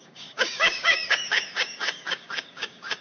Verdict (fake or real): fake